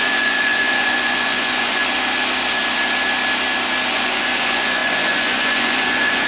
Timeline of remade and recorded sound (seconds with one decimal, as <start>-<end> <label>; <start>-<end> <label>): 0.0-1.8 remade; 1.8-3.9 recorded; 3.9-6.3 remade